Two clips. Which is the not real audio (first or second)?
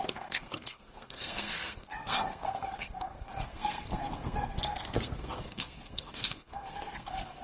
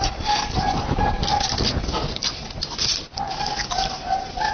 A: first